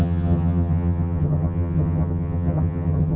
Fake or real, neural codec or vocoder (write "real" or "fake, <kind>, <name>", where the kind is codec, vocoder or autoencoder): fake, vocoder, HiFi-GAN